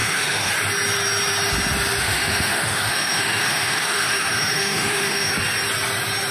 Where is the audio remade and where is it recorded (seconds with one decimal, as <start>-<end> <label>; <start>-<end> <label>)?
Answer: 0.0-0.5 remade; 0.5-2.0 recorded; 2.0-5.3 remade; 5.3-6.3 recorded